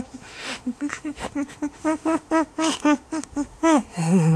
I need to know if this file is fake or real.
fake